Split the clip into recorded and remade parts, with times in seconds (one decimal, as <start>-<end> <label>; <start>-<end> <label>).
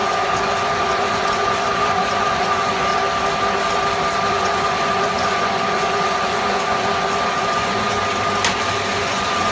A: 0.0-2.9 remade; 2.9-4.3 recorded; 4.3-8.0 remade; 8.0-8.9 recorded; 8.9-9.5 remade